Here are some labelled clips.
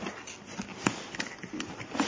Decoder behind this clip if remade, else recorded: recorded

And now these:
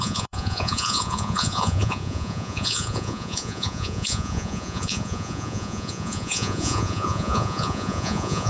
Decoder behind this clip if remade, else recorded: remade, vocoder, Vocos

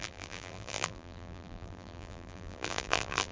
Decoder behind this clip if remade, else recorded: remade, vocoder, BigVGAN v2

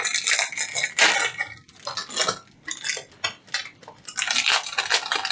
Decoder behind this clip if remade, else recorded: recorded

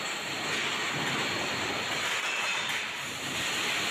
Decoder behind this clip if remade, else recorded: recorded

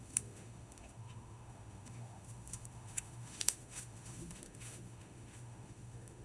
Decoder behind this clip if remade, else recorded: remade, autoencoder, DAC-VAE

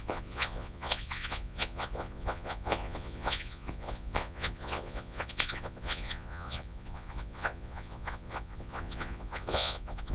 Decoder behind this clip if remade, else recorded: remade, vocoder, Vocos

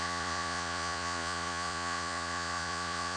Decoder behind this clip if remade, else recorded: remade, vocoder, Vocos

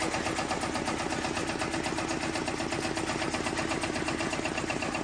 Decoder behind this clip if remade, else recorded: recorded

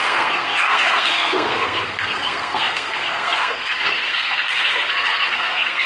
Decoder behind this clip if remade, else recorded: remade, codec, SNAC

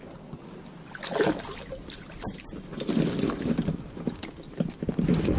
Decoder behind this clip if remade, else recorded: recorded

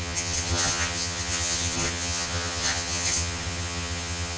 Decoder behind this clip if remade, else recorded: remade, vocoder, HiFi-GAN